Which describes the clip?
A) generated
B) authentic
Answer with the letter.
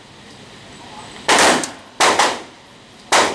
B